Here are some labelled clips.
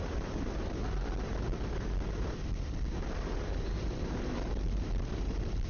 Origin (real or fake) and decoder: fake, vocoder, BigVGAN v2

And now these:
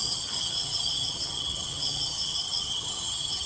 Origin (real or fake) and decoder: fake, vocoder, HiFi-GAN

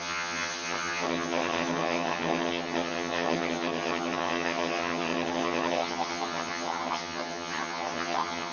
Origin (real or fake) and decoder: fake, vocoder, HiFi-GAN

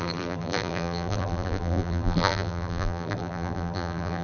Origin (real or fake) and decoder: fake, vocoder, BigVGAN v2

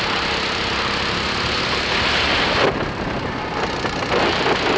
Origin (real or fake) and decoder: real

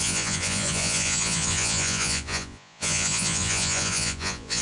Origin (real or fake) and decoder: fake, vocoder, Vocos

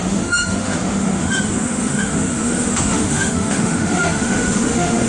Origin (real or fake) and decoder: fake, autoencoder, DAC-VAE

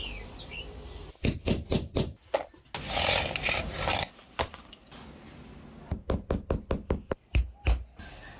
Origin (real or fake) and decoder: real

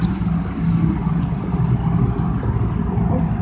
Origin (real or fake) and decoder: real